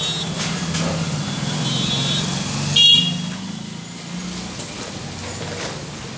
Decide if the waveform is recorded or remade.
recorded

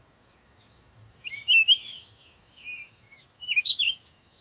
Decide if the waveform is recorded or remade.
remade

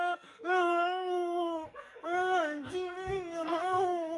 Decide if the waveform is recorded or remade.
remade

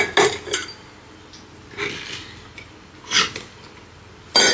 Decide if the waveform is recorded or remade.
recorded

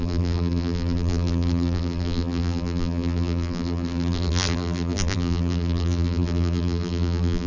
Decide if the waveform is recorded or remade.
remade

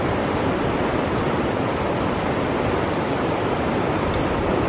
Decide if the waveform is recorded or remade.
recorded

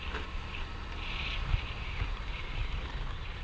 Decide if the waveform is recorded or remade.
remade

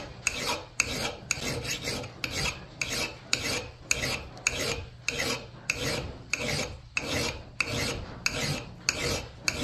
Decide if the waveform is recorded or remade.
recorded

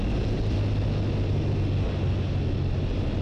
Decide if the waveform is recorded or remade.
recorded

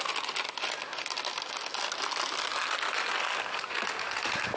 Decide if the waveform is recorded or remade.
recorded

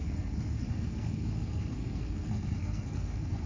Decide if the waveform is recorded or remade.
remade